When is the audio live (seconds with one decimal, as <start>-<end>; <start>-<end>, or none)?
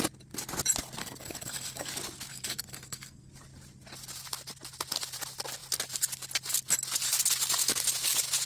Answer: 0.0-1.0; 1.9-2.3; 3.3-8.5